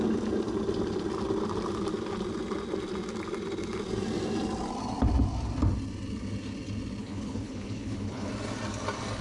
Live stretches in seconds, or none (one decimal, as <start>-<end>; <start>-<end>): 0.0-7.0; 8.3-9.2